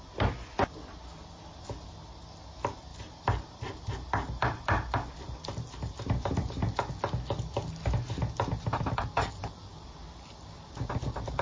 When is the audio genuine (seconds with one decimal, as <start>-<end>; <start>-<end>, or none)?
0.0-2.9; 6.9-11.4